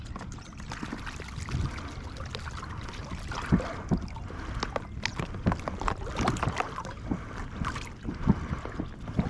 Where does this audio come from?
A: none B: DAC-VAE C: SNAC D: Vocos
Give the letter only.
A